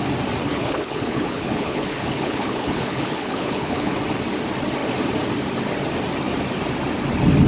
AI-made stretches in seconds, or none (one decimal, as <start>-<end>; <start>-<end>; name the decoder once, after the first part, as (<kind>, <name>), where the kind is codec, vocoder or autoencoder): 0.5-4.0 (codec, HILCodec)